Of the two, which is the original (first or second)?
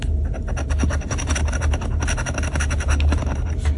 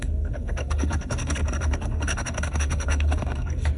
first